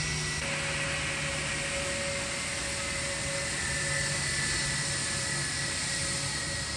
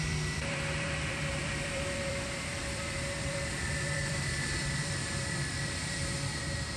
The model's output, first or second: second